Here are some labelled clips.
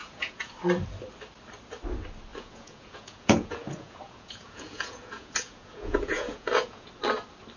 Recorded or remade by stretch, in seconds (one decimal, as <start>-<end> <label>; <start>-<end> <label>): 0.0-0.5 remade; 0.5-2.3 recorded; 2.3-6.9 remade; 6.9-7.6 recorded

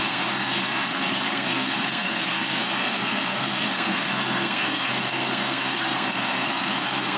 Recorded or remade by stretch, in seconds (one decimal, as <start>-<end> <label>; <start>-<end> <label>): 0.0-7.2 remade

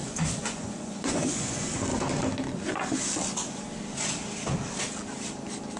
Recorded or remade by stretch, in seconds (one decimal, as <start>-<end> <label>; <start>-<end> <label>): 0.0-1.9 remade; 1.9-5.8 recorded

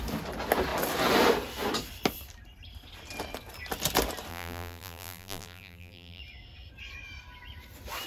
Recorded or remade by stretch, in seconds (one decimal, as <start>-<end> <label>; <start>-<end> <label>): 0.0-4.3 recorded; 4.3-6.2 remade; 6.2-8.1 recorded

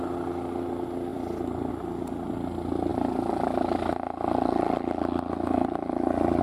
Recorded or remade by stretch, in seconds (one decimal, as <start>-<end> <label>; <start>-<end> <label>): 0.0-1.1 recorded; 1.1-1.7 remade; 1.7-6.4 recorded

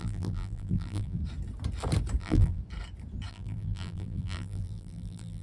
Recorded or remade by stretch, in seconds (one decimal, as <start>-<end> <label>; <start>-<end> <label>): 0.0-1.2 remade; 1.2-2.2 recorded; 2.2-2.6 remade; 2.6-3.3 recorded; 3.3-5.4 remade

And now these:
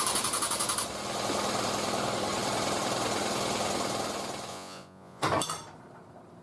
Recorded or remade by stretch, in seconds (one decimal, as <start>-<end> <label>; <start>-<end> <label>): 0.0-4.5 recorded; 4.5-5.2 remade; 5.2-6.4 recorded